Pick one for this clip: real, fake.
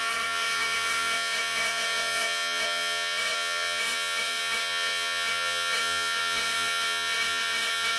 fake